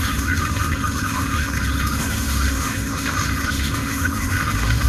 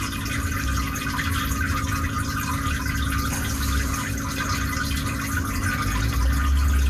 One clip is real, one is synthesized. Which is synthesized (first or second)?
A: first